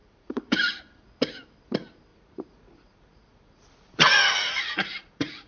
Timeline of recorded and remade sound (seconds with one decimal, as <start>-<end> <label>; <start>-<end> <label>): 0.0-0.8 remade; 0.8-2.1 recorded; 2.1-5.5 remade